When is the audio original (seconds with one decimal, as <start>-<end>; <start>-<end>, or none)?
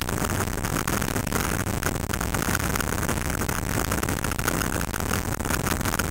0.0-6.1